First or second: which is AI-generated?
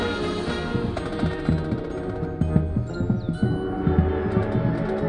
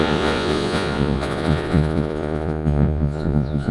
second